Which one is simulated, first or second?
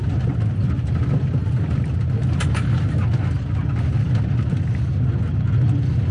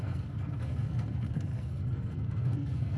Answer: second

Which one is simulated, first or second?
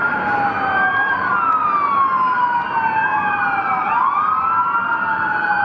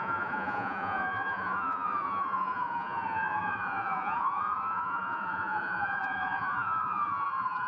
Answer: second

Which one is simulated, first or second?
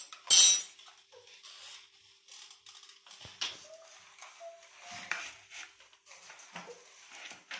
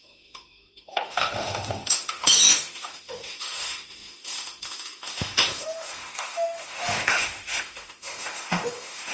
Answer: second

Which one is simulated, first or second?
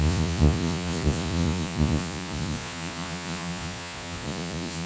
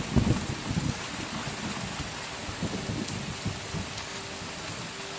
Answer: first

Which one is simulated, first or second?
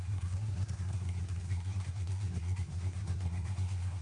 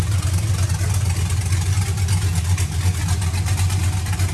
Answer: first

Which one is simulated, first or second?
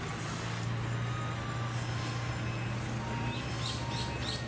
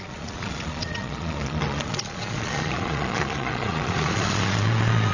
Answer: second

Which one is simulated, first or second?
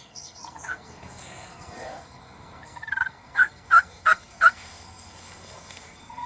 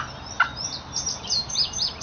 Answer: first